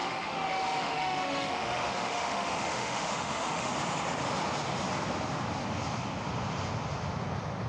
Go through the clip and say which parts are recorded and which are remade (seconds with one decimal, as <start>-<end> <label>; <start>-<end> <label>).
0.0-3.7 remade; 3.7-7.7 recorded

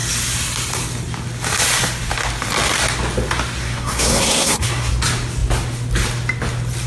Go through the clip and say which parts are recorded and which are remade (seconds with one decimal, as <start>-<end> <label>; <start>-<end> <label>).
0.0-3.6 recorded; 3.6-4.9 remade; 4.9-6.9 recorded

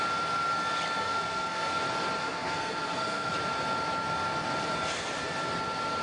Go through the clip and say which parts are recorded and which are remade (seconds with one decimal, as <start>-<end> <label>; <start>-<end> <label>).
0.0-1.0 recorded; 1.0-1.8 remade; 1.8-2.2 recorded; 2.2-3.3 remade; 3.3-6.0 recorded

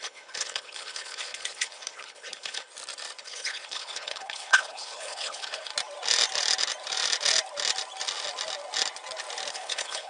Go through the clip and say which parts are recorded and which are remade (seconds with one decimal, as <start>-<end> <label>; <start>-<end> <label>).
0.0-2.7 remade; 2.7-3.2 recorded; 3.2-5.7 remade; 5.7-9.5 recorded; 9.5-10.1 remade

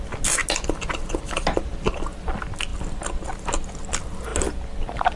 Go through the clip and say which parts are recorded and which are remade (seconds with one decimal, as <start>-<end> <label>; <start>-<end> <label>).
0.0-5.2 recorded

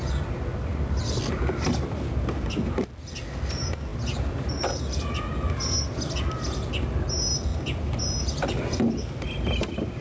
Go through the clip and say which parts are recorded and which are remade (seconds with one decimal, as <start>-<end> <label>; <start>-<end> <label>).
0.0-10.0 recorded

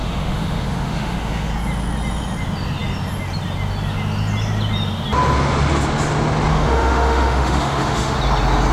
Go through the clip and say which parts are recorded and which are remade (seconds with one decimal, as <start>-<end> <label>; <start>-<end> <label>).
0.0-1.5 remade; 1.5-6.5 recorded; 6.5-8.2 remade; 8.2-8.7 recorded

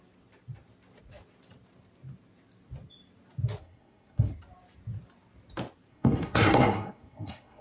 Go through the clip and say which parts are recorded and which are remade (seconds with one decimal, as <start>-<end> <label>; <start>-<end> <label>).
0.0-3.6 recorded; 3.6-4.3 remade; 4.3-5.9 recorded; 5.9-7.6 remade